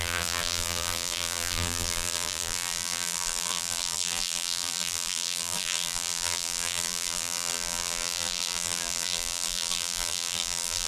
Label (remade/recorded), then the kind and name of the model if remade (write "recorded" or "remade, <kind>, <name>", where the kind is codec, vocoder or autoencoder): remade, vocoder, BigVGAN v2